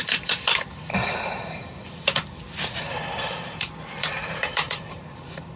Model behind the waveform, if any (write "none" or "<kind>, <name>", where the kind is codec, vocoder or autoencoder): vocoder, BigVGAN v2